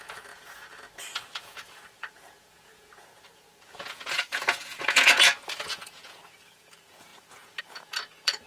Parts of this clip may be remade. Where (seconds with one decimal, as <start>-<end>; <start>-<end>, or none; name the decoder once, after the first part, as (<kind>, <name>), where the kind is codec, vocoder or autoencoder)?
0.0-8.5 (vocoder, Vocos)